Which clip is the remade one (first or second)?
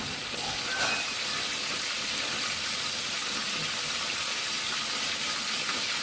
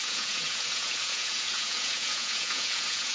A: second